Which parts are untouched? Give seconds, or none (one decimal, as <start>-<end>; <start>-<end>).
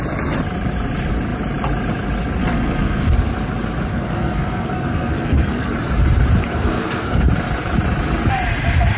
0.0-2.4; 3.1-3.9; 5.7-6.5; 7.2-9.0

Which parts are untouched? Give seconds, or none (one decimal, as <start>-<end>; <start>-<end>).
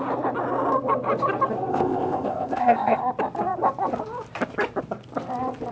0.0-1.7; 3.0-5.7